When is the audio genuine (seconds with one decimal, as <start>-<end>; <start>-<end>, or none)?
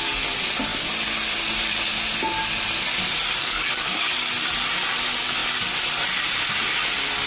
0.0-3.4; 4.3-7.3